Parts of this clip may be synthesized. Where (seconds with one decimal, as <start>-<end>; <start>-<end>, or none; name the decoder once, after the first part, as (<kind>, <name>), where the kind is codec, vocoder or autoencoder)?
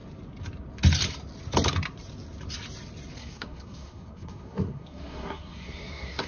3.2-6.3 (codec, SNAC)